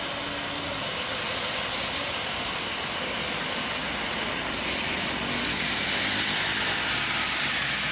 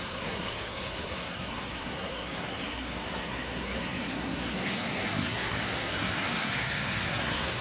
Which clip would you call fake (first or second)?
second